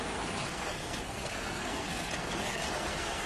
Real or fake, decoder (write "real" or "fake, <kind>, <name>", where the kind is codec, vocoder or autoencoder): fake, codec, SNAC